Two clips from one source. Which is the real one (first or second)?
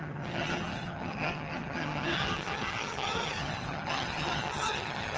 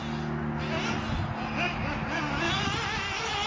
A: second